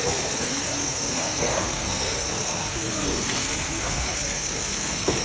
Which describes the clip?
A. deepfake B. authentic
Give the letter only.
A